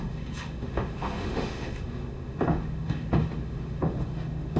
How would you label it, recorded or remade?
remade